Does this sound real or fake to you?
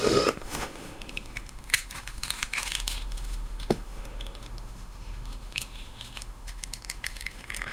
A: fake